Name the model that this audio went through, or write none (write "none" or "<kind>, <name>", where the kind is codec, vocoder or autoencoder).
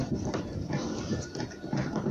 vocoder, BigVGAN v2